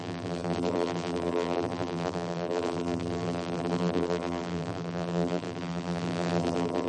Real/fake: fake